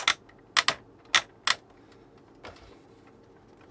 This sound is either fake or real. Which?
real